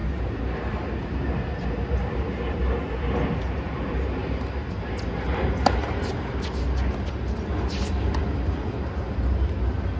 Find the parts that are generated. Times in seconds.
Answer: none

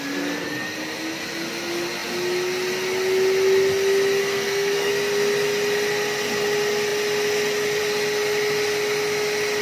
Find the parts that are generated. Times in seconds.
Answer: 4.2-4.9

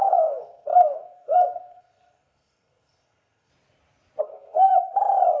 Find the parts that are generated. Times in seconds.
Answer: 0.0-3.5; 4.2-4.7